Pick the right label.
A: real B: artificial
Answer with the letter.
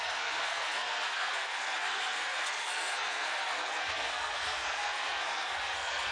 B